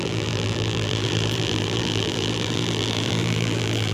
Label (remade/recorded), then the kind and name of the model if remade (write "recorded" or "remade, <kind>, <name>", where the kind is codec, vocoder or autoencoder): remade, vocoder, BigVGAN v2